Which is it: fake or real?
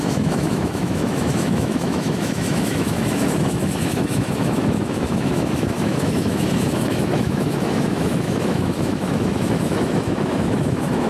fake